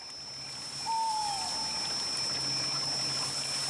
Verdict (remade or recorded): recorded